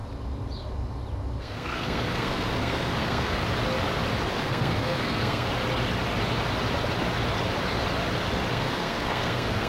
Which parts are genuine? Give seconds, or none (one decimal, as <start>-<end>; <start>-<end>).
0.0-1.4; 3.4-4.3; 5.5-8.5